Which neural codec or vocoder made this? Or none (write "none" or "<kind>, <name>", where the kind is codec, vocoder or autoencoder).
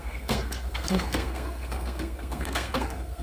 codec, SNAC